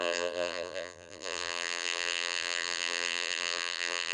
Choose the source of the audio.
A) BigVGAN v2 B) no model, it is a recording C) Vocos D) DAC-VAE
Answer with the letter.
A